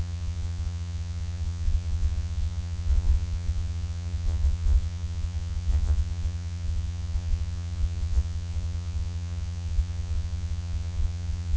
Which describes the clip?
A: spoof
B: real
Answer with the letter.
A